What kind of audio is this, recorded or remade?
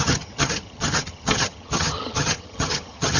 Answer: remade